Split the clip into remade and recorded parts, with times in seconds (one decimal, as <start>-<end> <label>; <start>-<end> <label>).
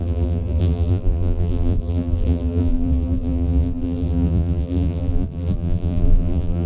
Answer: 0.0-6.7 remade